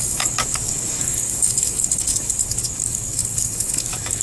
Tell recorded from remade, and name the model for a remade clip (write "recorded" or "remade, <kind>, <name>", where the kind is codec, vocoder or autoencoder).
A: remade, codec, DAC